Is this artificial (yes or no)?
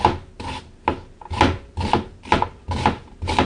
no